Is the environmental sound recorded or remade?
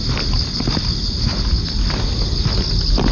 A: recorded